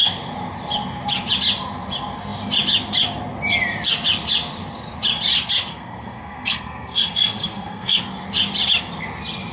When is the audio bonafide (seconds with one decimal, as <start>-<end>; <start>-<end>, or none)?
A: 0.0-5.7; 8.0-9.5

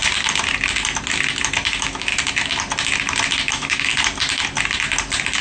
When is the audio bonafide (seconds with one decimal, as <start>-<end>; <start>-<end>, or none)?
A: 0.0-1.7; 2.1-3.5; 3.9-5.4

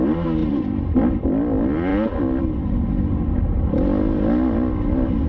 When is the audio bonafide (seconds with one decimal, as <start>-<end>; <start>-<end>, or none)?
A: 0.0-0.4; 1.0-5.3

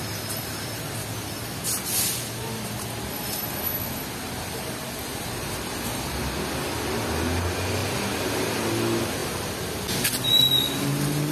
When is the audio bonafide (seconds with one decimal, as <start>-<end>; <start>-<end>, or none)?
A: 0.0-11.3

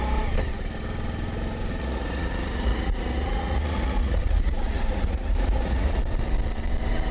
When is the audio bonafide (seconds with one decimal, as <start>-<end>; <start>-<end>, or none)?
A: 0.0-1.7; 6.0-7.1

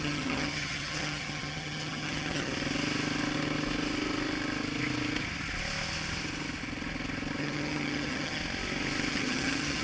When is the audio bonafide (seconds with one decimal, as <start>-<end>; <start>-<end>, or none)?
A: 2.5-7.4; 8.4-9.1